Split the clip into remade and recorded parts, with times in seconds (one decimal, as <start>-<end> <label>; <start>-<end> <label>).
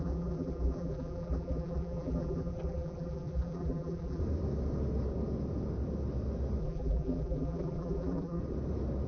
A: 0.0-4.2 remade; 4.2-6.6 recorded; 6.6-8.4 remade; 8.4-9.1 recorded